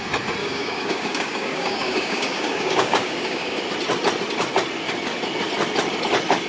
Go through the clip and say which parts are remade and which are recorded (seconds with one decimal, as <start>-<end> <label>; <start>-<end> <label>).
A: 0.0-0.4 recorded; 0.4-3.6 remade; 3.6-6.5 recorded